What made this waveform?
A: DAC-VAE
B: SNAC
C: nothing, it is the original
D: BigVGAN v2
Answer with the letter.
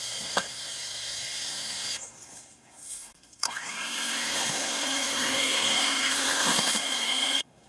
B